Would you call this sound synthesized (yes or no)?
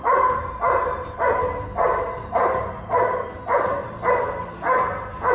no